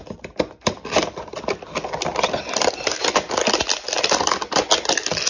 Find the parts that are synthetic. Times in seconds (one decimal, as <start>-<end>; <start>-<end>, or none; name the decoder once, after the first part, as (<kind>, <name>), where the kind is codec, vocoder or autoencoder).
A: none